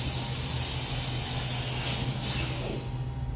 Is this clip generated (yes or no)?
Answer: no